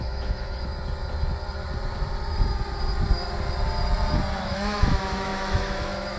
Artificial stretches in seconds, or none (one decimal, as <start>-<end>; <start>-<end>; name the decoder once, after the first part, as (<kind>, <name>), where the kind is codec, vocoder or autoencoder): 0.0-0.7 (autoencoder, DAC-VAE); 4.4-6.2